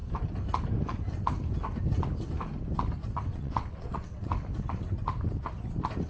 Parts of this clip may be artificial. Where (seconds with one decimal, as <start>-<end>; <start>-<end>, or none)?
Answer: 3.3-4.3